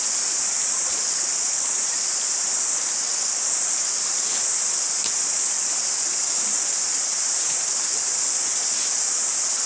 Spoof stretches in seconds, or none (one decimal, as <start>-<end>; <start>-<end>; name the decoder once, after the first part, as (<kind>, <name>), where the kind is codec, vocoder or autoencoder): none